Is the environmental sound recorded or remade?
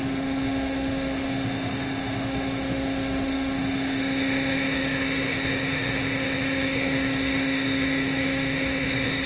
remade